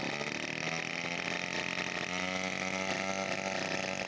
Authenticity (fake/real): real